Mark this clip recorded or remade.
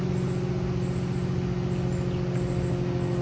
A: recorded